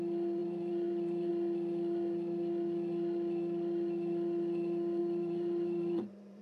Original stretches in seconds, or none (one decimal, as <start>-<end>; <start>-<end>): 0.0-0.4; 1.3-5.0